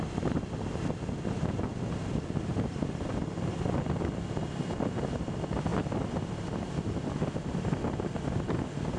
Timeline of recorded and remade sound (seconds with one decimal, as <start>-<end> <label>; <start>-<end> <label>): 0.0-9.0 recorded